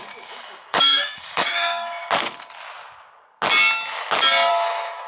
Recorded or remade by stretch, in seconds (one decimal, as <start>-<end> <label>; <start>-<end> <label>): 0.0-2.0 remade; 2.0-4.5 recorded; 4.5-5.1 remade